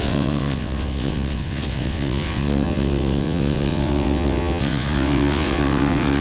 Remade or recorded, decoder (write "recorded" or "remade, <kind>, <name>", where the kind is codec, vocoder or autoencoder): remade, vocoder, WaveNeXt